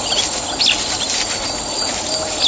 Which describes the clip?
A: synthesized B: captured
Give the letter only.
B